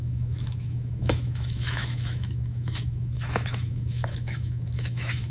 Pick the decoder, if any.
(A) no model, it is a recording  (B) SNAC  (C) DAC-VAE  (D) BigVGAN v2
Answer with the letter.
C